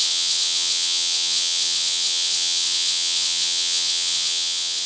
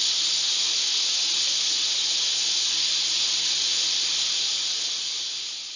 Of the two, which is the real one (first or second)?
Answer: second